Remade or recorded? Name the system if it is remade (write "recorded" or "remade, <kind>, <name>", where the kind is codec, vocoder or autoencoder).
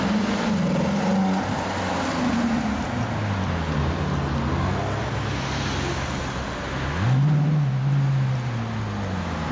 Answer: recorded